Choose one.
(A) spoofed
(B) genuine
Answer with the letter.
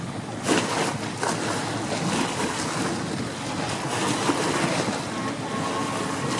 B